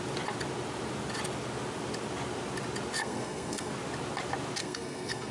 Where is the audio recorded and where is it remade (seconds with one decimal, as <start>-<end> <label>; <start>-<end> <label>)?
0.0-3.0 recorded; 3.0-3.7 remade; 3.7-4.6 recorded; 4.6-5.3 remade